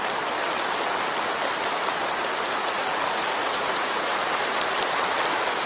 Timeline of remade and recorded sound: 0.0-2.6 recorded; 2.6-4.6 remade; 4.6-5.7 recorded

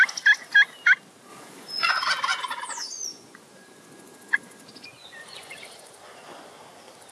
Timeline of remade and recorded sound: 0.0-1.3 recorded; 1.3-1.9 remade; 1.9-2.3 recorded; 2.3-6.6 remade; 6.6-7.1 recorded

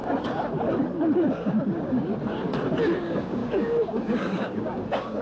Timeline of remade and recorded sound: 0.0-1.3 recorded; 1.3-2.1 remade; 2.1-3.0 recorded; 3.0-5.2 remade

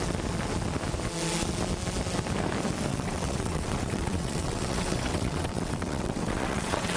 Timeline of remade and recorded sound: 0.0-2.9 recorded; 2.9-7.0 remade

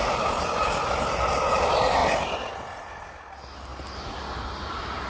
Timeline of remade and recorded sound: 0.0-5.1 recorded